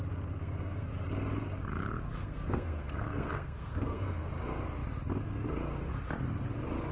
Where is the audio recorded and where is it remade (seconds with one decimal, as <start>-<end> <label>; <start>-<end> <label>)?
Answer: 0.0-0.4 recorded; 0.4-0.9 remade; 0.9-2.2 recorded; 2.2-4.3 remade; 4.3-6.9 recorded